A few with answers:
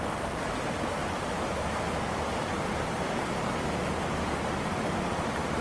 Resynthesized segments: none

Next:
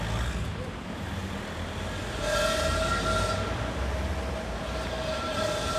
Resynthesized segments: none

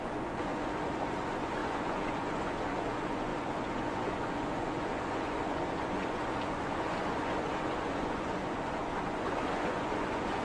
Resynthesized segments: 0.0-10.4 (vocoder, Vocos)